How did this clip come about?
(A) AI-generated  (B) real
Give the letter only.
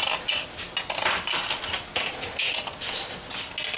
B